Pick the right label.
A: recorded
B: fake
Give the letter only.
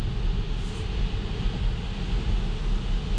A